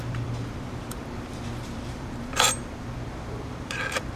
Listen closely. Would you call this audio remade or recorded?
remade